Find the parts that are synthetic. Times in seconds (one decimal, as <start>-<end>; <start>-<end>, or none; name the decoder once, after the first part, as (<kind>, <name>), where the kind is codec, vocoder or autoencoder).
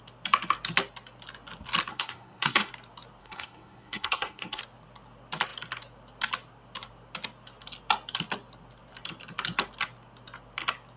1.9-2.7 (codec, SNAC); 3.2-4.6